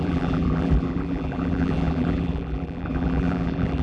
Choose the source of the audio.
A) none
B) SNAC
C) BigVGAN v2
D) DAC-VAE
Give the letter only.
C